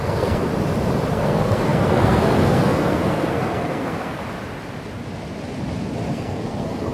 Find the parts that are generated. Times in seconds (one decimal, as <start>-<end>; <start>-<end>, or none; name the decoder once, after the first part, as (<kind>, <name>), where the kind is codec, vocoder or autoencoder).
0.0-0.5 (codec, SNAC); 1.1-4.2; 6.1-6.9